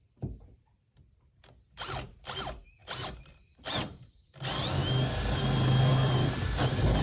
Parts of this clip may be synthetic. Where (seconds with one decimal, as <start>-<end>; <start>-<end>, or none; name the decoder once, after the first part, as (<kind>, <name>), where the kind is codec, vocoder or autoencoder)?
2.8-4.1 (vocoder, BigVGAN v2); 5.9-6.4